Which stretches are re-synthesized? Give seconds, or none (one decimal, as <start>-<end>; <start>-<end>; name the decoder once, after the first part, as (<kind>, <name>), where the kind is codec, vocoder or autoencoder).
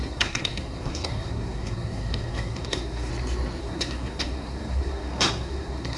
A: 0.0-3.1 (codec, SNAC); 3.6-6.0